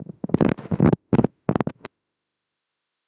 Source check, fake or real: fake